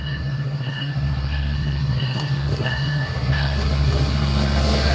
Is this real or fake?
fake